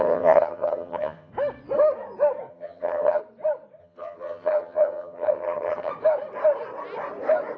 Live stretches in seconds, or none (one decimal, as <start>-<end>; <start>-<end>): 1.3-2.5; 3.2-3.8; 5.9-7.6

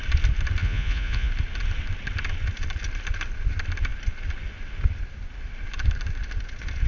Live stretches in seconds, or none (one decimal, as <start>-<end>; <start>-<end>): 0.0-0.6; 1.3-6.9

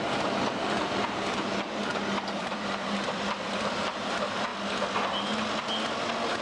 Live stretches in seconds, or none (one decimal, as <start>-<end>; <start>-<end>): 1.9-2.4; 4.5-6.4

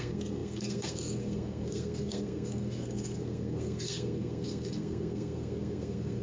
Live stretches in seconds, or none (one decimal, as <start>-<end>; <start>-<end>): none

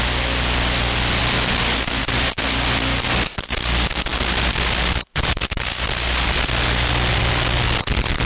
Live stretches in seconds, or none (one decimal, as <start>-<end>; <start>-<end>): 0.0-8.2

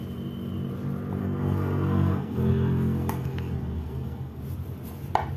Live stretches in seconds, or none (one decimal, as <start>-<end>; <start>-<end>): 0.0-1.2; 4.4-5.4